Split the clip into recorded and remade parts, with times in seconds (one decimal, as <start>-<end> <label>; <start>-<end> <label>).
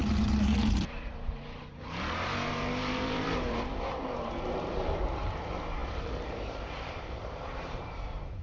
0.0-8.4 remade